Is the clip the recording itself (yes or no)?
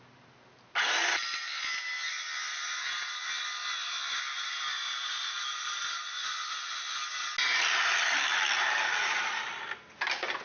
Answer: yes